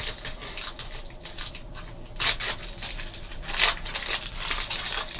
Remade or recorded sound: recorded